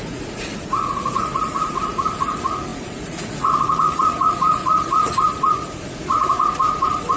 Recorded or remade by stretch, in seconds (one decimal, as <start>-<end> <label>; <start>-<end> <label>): 0.0-7.2 remade